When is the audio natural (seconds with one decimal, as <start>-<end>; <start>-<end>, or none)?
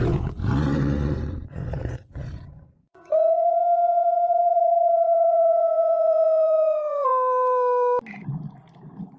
7.1-9.2